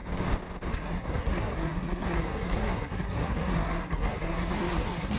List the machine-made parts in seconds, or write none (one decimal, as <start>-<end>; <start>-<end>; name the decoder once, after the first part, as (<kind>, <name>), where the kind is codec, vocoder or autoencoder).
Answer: 0.7-5.2 (codec, SNAC)